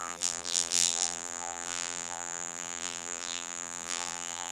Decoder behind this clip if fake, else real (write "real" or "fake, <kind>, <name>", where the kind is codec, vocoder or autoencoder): fake, vocoder, BigVGAN v2